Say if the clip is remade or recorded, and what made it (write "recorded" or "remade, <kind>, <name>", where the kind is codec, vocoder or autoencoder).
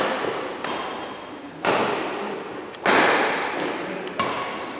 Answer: recorded